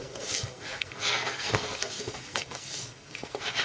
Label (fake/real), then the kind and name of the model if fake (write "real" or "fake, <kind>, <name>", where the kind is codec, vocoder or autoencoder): fake, codec, SNAC